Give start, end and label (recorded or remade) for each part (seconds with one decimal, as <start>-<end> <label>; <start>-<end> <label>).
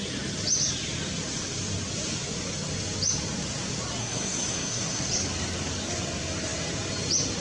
0.0-4.0 recorded; 4.0-5.1 remade; 5.1-7.4 recorded